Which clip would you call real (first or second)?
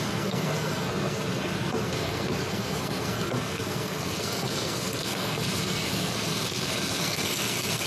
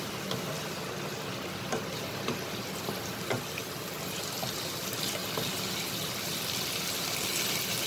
second